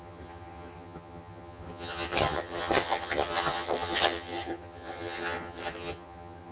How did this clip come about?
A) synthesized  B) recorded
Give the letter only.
A